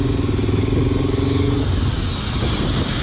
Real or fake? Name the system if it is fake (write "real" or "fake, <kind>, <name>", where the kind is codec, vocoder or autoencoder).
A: real